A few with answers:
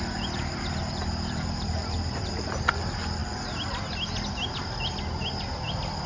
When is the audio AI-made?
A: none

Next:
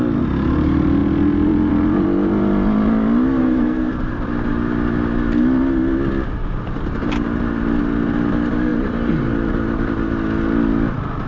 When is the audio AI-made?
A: 3.4-3.9